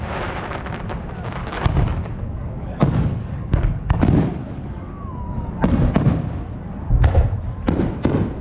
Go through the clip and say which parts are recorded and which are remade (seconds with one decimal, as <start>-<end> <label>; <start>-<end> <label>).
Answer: 0.0-1.4 recorded; 1.4-5.5 remade; 5.5-8.4 recorded